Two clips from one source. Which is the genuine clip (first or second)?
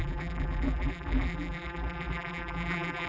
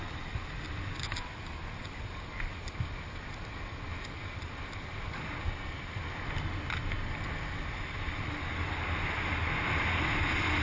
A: second